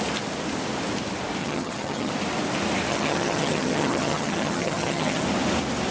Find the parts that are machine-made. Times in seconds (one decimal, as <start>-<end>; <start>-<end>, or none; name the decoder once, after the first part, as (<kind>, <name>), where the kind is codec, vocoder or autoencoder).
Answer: 1.4-2.1 (vocoder, HiFi-GAN); 2.9-5.2